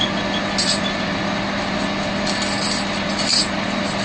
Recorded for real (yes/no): yes